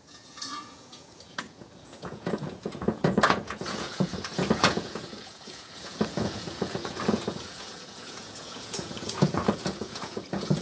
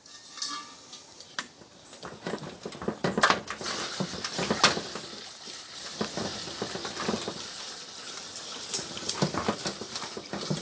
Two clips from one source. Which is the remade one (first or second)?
first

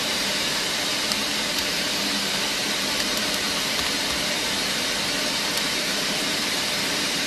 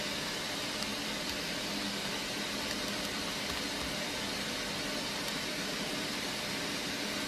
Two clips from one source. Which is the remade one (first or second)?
first